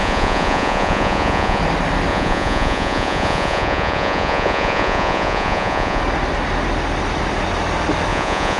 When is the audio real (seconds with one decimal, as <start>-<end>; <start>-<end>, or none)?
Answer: 1.6-2.1; 6.0-8.1